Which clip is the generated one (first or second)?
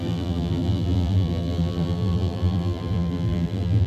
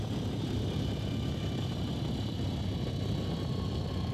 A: first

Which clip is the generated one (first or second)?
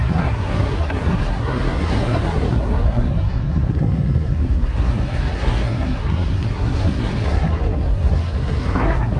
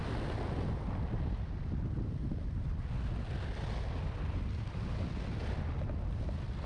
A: first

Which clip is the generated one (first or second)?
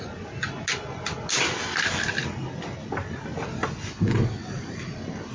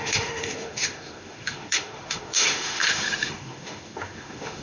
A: second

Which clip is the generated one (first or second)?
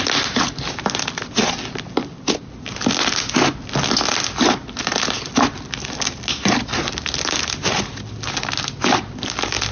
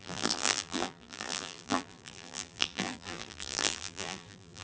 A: second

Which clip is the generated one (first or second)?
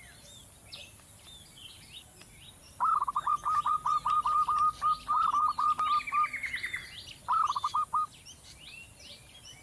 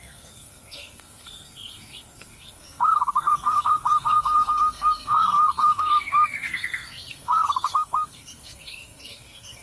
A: second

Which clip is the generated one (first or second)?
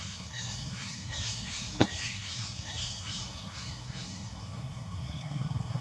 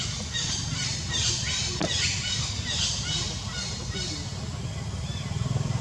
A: first